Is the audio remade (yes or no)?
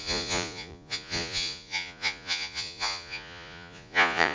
yes